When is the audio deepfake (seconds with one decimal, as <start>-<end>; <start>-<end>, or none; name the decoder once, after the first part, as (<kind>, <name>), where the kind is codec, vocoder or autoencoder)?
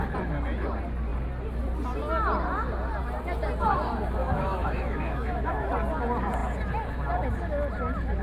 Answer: 4.2-5.7 (autoencoder, DAC-VAE)